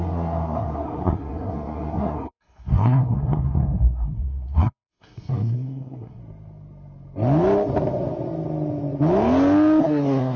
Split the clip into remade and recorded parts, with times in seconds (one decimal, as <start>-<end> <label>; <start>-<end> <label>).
0.0-6.2 remade; 6.2-9.8 recorded; 9.8-10.4 remade